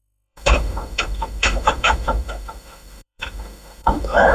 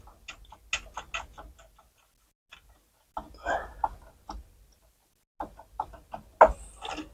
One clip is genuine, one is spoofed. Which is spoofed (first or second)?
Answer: first